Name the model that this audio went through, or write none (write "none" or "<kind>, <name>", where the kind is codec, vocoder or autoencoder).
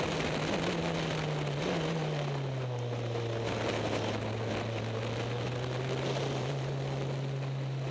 none